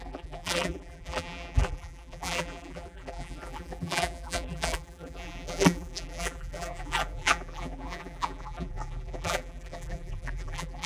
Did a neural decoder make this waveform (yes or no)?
yes